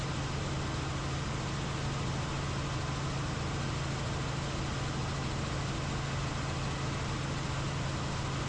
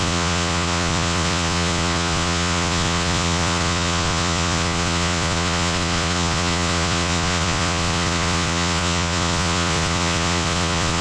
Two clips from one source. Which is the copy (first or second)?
second